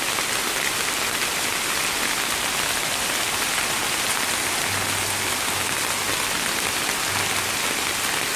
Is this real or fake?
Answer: real